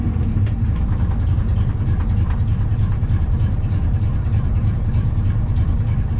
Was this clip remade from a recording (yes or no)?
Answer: yes